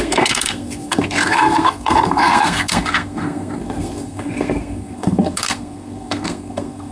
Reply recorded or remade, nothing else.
remade